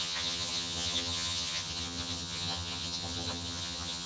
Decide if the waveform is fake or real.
fake